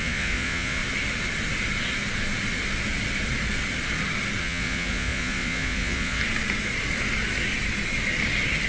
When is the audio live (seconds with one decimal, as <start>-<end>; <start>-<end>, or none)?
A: 0.8-4.4; 6.2-8.7